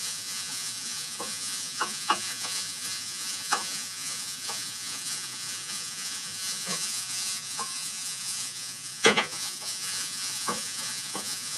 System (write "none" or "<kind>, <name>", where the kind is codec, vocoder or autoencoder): vocoder, Vocos